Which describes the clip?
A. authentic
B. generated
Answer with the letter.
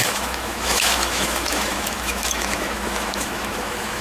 B